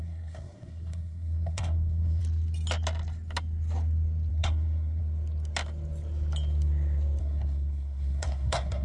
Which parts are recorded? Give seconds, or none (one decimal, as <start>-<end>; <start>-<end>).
2.2-4.3; 5.0-7.2